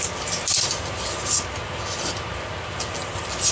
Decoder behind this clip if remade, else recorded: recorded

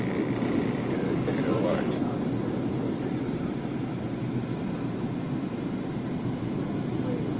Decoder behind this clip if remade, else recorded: recorded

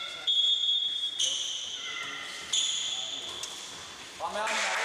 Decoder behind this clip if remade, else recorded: recorded